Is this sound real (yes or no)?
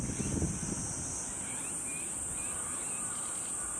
yes